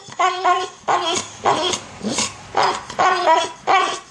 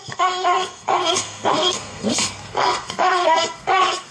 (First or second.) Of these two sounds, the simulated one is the second